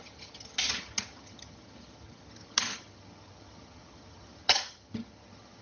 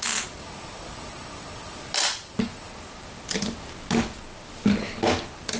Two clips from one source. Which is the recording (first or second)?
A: second